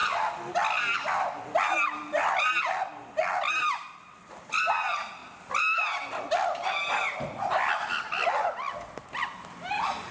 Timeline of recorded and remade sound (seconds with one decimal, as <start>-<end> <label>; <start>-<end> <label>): 0.0-10.1 recorded